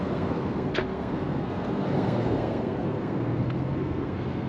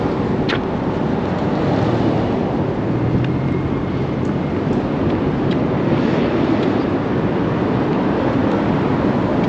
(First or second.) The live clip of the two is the second